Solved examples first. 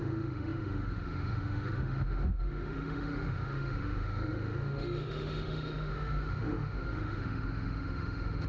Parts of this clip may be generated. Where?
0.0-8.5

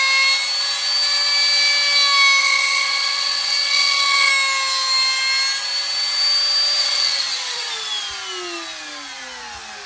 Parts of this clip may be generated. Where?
2.4-4.3; 6.8-7.7

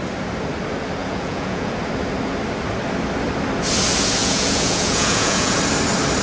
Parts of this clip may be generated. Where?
1.0-1.7; 4.2-5.6

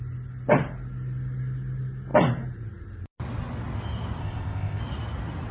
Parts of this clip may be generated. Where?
4.2-4.8